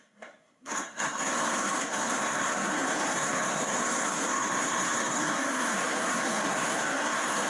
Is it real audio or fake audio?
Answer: fake